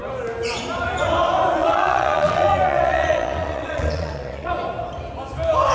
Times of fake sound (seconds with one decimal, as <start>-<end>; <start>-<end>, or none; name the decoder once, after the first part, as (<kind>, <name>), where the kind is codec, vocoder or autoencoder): 1.6-4.5 (vocoder, Vocos)